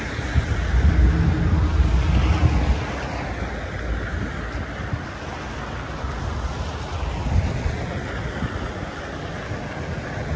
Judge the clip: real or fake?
real